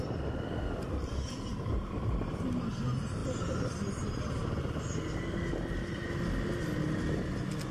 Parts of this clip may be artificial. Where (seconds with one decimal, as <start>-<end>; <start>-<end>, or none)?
none